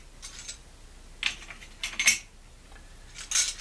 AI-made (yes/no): no